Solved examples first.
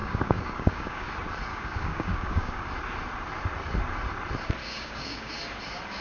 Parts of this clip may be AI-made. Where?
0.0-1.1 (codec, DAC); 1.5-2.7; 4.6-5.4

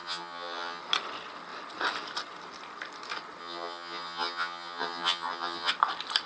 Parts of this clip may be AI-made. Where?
0.0-0.8 (vocoder, HiFi-GAN); 3.4-5.7

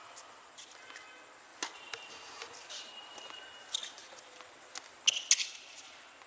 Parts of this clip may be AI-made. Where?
none

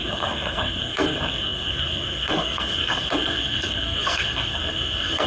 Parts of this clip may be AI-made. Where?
0.0-5.3 (codec, SNAC)

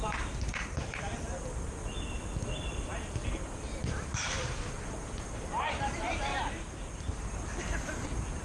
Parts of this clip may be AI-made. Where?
0.0-1.8 (vocoder, BigVGAN v2); 2.7-3.2; 4.4-8.4

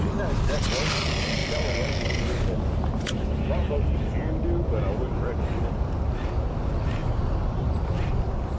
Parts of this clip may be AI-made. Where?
7.0-8.6 (vocoder, BigVGAN v2)